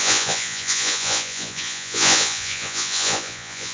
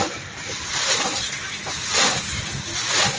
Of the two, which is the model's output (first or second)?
first